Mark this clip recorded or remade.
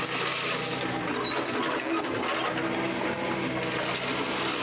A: recorded